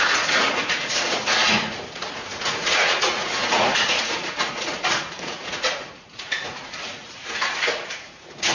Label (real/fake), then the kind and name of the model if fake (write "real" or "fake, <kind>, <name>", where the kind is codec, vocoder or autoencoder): fake, vocoder, Vocos